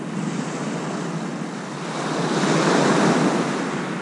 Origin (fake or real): real